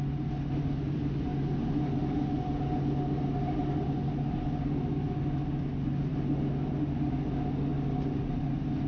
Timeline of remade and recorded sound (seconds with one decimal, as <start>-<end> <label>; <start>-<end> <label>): 0.0-8.9 recorded